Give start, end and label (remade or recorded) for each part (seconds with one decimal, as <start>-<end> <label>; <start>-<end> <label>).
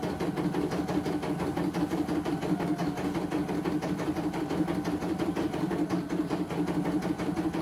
0.0-7.6 recorded